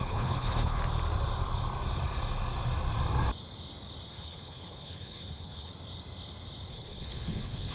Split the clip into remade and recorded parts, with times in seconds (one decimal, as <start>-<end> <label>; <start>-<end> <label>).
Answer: 0.0-0.8 remade; 0.8-4.1 recorded; 4.1-5.7 remade; 5.7-6.7 recorded; 6.7-7.7 remade